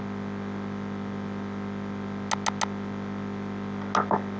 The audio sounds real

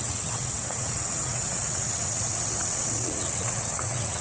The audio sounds fake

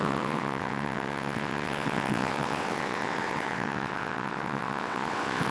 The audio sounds fake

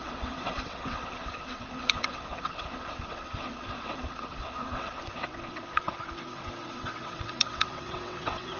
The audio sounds fake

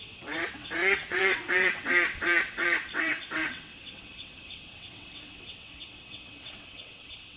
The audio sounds fake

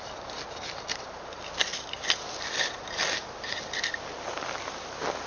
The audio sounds real